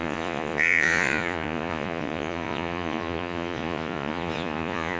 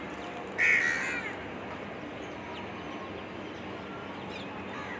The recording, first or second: second